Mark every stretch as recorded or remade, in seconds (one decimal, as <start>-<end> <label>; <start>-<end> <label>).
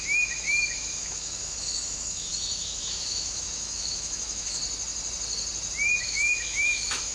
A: 0.0-4.6 remade; 4.6-6.0 recorded; 6.0-7.1 remade